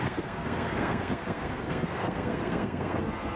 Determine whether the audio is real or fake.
fake